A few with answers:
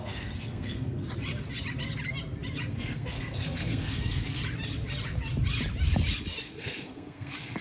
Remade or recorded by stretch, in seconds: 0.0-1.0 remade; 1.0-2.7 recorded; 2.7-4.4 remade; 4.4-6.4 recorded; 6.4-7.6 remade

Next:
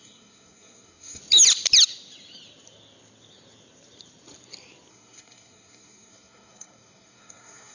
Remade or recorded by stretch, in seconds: 0.0-1.2 remade; 1.2-4.9 recorded; 4.9-7.7 remade

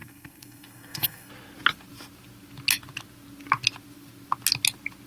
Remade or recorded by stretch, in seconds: 0.0-1.3 remade; 1.3-5.1 recorded

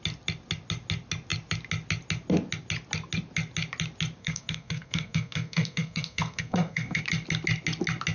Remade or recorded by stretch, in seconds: 0.0-4.2 recorded; 4.2-7.0 remade; 7.0-8.1 recorded

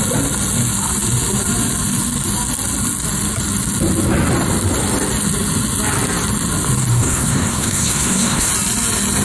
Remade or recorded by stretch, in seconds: 0.0-6.9 recorded; 6.9-8.5 remade; 8.5-9.2 recorded

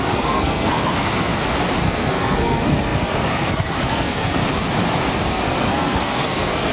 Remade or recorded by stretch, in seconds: 0.0-1.3 remade; 1.3-1.8 recorded; 1.8-4.4 remade; 4.4-5.3 recorded; 5.3-6.7 remade

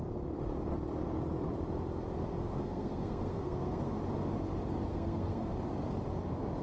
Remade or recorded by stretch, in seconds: 0.0-2.4 recorded; 2.4-3.9 remade; 3.9-4.9 recorded; 4.9-5.5 remade; 5.5-6.6 recorded